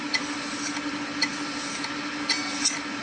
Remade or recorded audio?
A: recorded